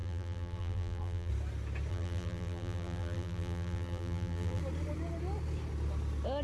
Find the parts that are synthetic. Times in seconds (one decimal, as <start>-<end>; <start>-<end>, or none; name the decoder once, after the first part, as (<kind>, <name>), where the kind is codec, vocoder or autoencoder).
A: 0.0-1.3 (vocoder, BigVGAN v2); 1.9-4.6